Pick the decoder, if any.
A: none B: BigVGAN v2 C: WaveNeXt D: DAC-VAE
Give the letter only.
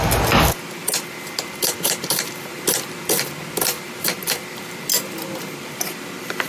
A